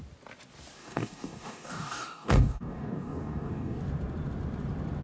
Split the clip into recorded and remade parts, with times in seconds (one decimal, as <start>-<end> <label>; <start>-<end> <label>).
0.0-0.8 recorded; 0.8-3.8 remade; 3.8-5.0 recorded